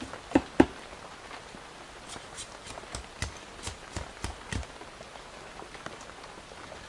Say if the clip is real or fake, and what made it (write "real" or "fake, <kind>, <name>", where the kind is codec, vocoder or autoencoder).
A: real